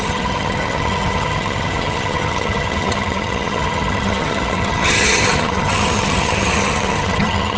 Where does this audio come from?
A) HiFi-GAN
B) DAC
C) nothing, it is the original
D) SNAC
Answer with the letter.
A